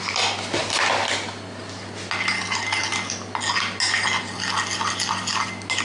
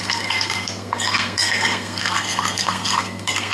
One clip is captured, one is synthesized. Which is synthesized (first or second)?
second